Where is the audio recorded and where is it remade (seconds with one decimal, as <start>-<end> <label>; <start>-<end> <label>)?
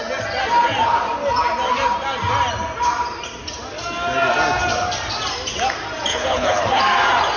0.0-6.1 recorded; 6.1-6.8 remade; 6.8-7.4 recorded